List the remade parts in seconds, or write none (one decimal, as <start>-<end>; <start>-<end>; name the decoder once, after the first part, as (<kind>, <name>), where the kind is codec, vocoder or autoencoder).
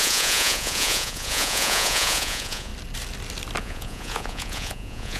0.0-2.7 (vocoder, Vocos); 3.6-5.2